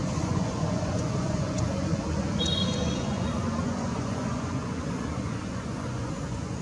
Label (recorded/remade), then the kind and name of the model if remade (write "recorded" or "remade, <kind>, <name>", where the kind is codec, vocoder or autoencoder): remade, vocoder, Vocos